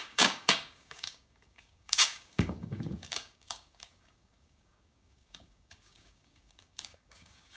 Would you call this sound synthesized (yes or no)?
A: yes